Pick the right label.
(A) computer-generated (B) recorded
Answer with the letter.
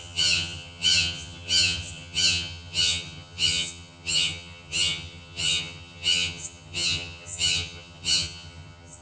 A